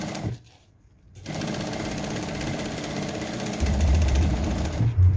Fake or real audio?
real